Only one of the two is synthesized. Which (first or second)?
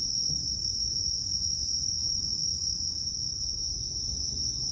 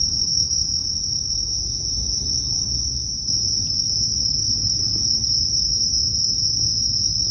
first